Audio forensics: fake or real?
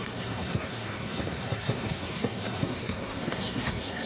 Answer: fake